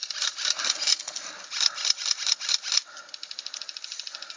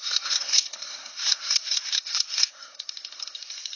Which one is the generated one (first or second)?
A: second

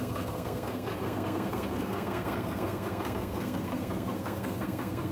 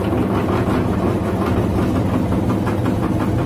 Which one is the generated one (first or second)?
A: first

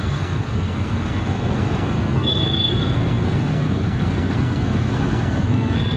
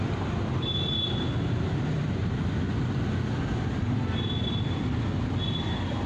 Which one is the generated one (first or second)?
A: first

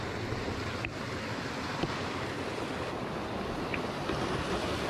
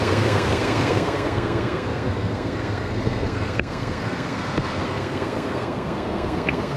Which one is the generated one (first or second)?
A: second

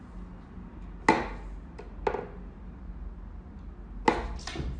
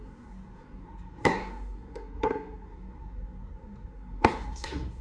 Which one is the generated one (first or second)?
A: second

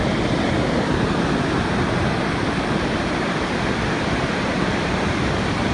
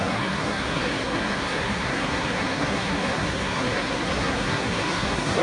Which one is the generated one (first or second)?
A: second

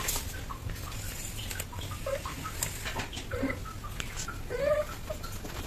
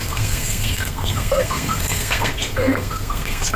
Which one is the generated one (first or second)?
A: second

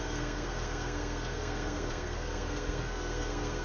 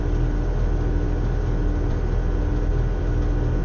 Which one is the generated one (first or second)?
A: first